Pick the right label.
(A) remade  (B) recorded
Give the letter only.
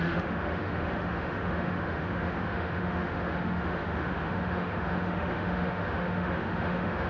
A